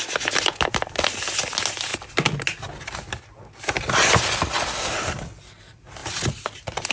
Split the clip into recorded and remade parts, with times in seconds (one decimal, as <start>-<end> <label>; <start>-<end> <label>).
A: 0.0-6.9 recorded